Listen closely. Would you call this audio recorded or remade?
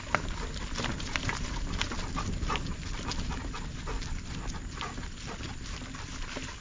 recorded